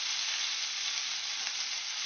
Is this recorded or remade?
recorded